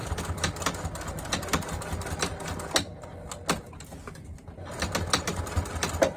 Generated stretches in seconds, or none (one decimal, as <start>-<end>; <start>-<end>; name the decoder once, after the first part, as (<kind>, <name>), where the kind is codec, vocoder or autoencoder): none